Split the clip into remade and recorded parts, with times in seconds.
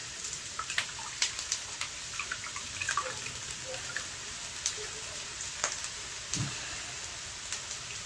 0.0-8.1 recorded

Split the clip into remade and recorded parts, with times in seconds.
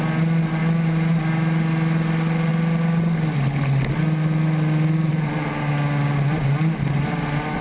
0.0-5.1 recorded; 5.1-5.7 remade; 5.7-7.6 recorded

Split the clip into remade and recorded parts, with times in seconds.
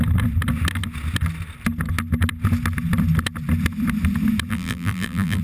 0.0-4.5 recorded; 4.5-5.4 remade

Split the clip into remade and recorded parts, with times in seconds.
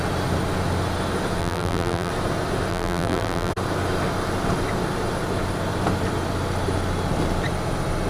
0.0-1.4 recorded; 1.4-2.1 remade; 2.1-2.7 recorded; 2.7-3.5 remade; 3.5-8.1 recorded